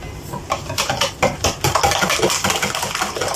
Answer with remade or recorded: recorded